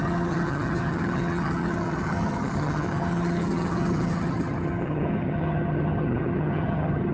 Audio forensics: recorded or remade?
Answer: remade